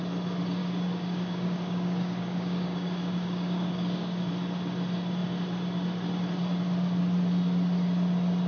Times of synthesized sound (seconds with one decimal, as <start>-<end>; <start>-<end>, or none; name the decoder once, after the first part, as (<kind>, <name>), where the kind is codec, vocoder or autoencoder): 0.6-4.3 (codec, DAC)